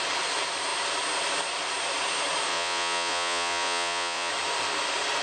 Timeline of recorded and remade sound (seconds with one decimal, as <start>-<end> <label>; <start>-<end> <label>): 0.0-2.5 recorded; 2.5-4.3 remade; 4.3-5.2 recorded